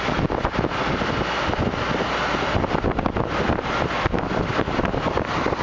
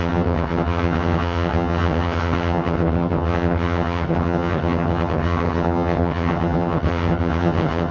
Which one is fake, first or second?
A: second